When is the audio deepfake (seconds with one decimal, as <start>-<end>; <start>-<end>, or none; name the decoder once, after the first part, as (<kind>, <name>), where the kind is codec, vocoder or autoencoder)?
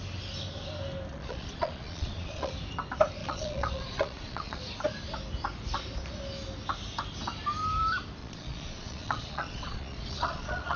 1.1-2.5 (vocoder, Vocos); 3.2-4.6; 8.2-10.8